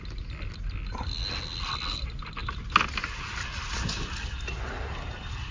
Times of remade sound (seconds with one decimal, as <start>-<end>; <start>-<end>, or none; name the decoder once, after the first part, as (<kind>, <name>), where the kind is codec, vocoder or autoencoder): none